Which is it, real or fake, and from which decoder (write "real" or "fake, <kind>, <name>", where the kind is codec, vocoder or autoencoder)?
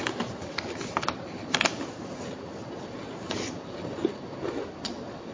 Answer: real